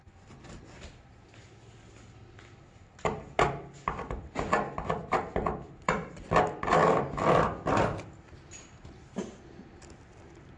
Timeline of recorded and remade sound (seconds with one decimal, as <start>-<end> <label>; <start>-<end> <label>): 0.0-10.6 recorded